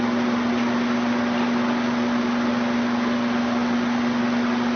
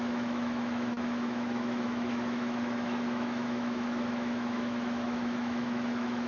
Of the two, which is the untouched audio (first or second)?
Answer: first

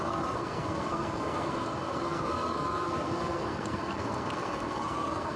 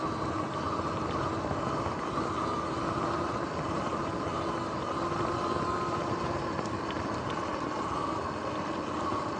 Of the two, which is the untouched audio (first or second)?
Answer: second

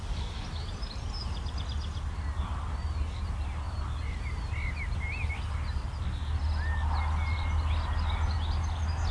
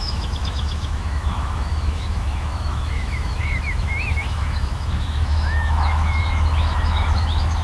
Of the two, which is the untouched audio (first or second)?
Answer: first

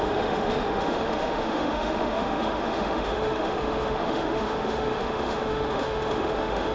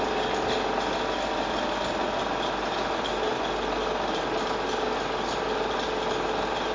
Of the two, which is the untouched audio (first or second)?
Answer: second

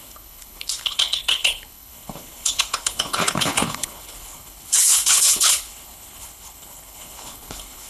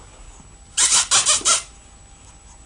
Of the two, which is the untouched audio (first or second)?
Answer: second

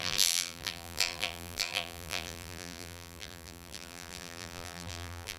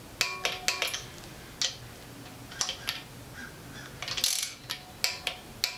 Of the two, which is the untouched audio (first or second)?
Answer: second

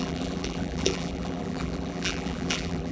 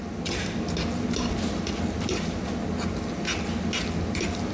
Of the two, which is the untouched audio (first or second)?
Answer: second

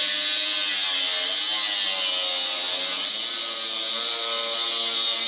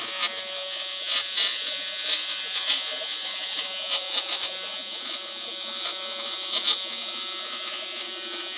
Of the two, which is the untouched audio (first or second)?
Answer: first